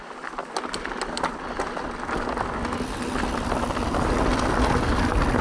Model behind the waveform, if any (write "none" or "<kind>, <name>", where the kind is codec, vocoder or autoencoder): none